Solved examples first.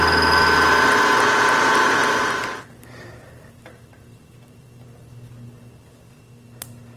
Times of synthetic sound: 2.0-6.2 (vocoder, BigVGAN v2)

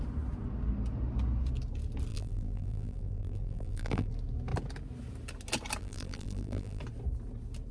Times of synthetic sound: 2.1-4.1 (vocoder, BigVGAN v2); 5.8-6.8

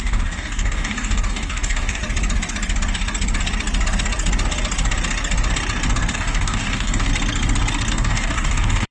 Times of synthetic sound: 0.0-2.0 (codec, DAC); 6.1-7.1; 7.9-8.9